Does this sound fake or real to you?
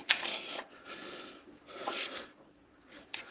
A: fake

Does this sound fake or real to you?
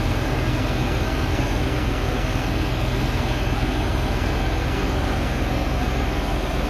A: fake